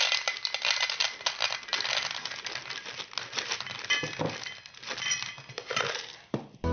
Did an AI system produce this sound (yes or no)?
no